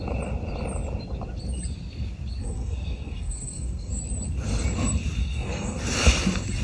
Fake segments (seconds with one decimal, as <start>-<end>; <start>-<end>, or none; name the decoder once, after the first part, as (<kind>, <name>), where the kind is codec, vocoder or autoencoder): 2.4-4.0 (codec, SNAC); 5.2-5.8